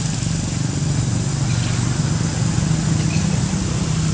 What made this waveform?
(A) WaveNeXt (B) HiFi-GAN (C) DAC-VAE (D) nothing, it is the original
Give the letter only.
D